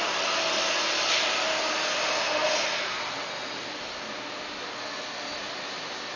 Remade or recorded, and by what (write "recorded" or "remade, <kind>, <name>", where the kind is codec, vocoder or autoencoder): recorded